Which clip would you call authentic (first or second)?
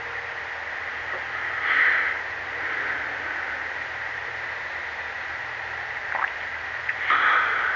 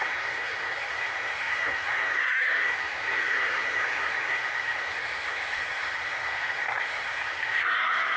first